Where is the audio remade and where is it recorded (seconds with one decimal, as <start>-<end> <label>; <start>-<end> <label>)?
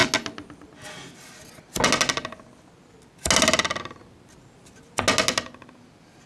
0.0-6.3 recorded